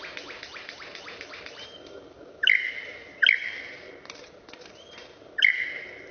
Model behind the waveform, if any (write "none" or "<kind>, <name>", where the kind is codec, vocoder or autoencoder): none